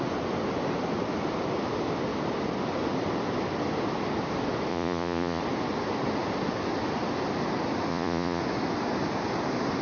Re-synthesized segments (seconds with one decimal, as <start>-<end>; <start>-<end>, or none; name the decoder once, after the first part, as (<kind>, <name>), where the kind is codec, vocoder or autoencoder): 4.7-5.4 (vocoder, Vocos); 7.9-8.4